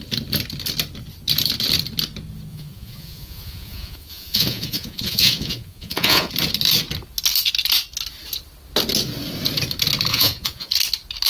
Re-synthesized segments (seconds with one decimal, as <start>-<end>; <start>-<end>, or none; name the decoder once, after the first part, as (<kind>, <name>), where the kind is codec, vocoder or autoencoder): 2.5-6.3 (vocoder, Vocos); 10.1-10.7